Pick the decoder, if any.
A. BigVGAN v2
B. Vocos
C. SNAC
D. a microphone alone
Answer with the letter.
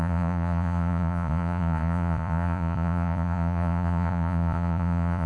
B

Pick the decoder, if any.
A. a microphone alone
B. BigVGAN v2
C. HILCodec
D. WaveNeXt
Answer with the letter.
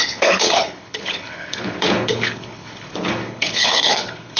C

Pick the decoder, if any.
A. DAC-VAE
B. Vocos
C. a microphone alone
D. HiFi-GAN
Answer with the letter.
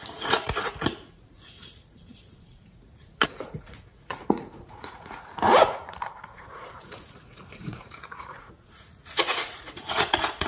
B